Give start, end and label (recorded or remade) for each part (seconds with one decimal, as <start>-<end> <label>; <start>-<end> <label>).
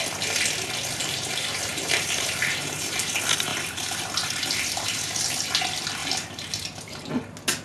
0.0-1.0 recorded; 1.0-3.1 remade; 3.1-3.5 recorded; 3.5-5.3 remade; 5.3-6.0 recorded; 6.0-7.1 remade; 7.1-7.6 recorded